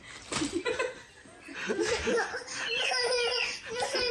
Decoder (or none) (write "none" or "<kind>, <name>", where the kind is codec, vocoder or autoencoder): none